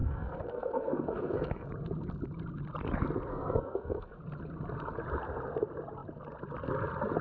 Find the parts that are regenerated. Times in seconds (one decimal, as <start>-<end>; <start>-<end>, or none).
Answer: 0.0-1.7; 3.3-4.2